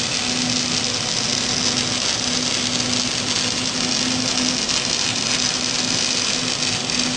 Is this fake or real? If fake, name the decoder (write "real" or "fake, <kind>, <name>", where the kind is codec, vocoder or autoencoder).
real